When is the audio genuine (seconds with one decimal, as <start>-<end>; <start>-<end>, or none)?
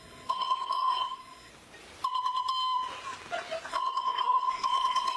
1.5-3.7